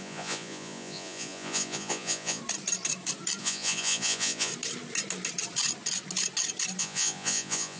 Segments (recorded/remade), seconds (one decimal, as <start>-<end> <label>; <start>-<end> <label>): 0.0-2.4 remade; 2.4-3.4 recorded; 3.4-4.5 remade; 4.5-6.8 recorded; 6.8-7.8 remade